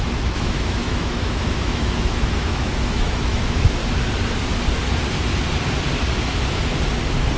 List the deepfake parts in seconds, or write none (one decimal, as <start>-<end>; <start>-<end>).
0.0-3.8